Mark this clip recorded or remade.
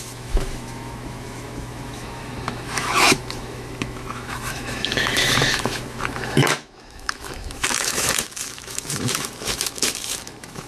remade